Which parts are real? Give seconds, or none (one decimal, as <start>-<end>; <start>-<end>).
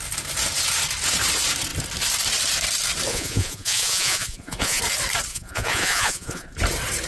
0.0-3.1; 4.8-5.3; 6.5-7.1